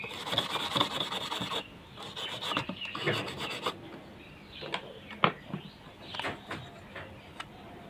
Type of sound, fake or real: real